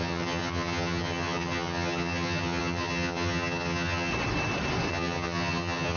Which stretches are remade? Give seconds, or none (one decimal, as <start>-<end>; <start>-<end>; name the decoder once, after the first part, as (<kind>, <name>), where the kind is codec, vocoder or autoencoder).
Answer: 0.0-4.1 (vocoder, HiFi-GAN); 4.9-6.0